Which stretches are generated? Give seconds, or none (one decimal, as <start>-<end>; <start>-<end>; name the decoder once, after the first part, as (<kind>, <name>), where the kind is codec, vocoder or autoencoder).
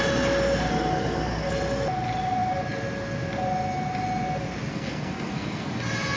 0.7-1.5 (codec, SNAC); 4.7-5.7